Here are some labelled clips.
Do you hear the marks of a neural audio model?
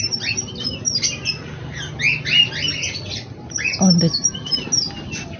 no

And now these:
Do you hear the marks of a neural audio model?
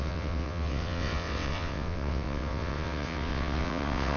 yes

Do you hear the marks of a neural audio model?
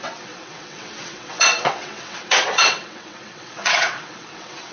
yes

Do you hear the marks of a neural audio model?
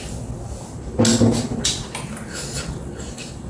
no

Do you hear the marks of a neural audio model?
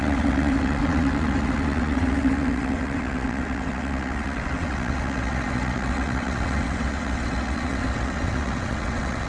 yes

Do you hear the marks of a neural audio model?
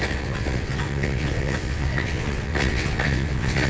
yes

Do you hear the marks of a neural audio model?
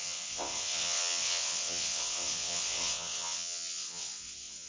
yes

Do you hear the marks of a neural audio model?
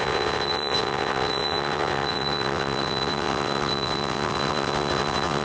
yes